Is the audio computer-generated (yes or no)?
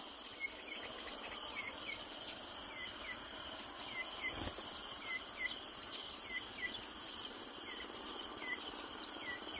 no